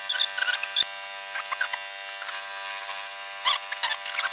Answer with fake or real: real